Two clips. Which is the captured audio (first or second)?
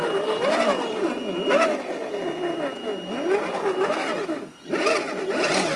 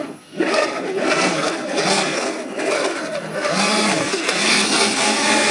first